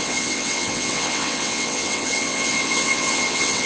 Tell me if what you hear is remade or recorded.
remade